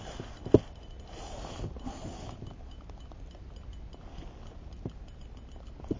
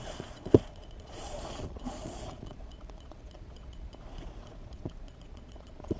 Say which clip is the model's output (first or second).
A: second